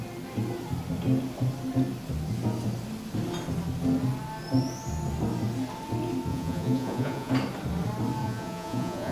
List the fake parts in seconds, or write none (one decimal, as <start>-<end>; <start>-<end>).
6.3-7.3; 8.2-9.1